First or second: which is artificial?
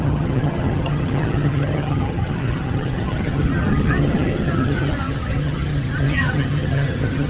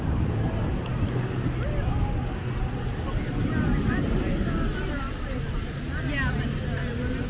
first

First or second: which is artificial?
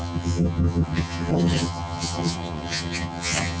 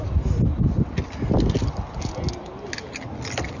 first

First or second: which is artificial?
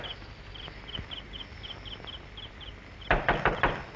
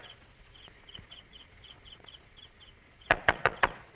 second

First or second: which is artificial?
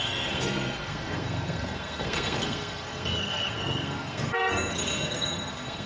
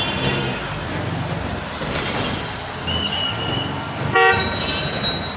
first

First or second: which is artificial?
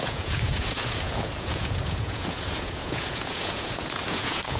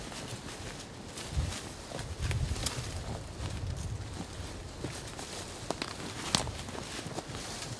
first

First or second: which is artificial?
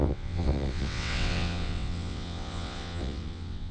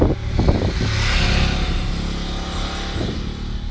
first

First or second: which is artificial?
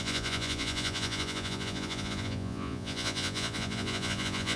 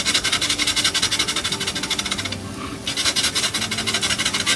first